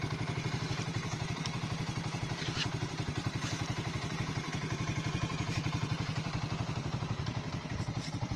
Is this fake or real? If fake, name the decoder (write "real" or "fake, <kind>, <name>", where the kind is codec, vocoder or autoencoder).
fake, vocoder, BigVGAN v2